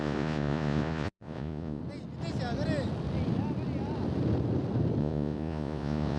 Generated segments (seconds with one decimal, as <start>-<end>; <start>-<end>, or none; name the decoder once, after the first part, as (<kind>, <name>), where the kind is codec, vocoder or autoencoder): 0.0-1.8 (vocoder, Vocos); 5.0-6.2